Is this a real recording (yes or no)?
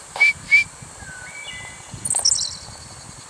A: yes